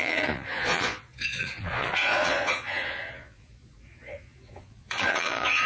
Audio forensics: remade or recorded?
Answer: remade